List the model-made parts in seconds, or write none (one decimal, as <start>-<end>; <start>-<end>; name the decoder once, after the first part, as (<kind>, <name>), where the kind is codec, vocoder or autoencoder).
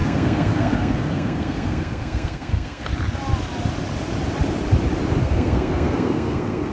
0.0-2.9 (codec, SNAC); 5.2-6.7